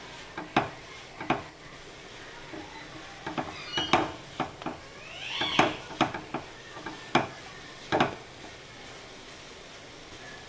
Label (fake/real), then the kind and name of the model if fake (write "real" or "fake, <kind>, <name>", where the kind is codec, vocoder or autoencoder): real